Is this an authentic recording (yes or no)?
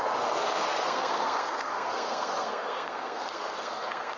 no